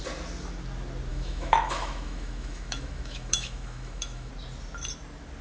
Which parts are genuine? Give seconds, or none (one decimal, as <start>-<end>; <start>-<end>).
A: 0.0-1.1; 4.3-5.4